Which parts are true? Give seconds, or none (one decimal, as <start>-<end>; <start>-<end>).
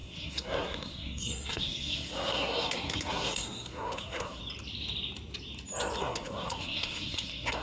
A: 4.4-6.0